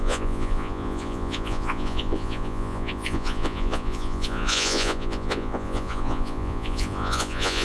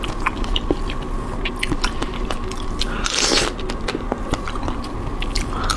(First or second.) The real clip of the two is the second